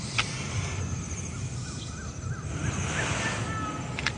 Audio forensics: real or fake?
real